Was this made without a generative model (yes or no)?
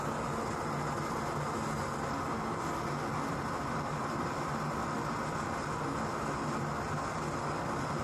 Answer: yes